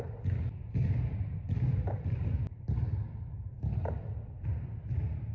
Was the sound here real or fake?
real